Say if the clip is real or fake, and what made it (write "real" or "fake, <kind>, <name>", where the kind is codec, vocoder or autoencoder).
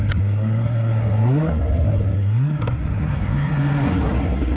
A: fake, codec, SNAC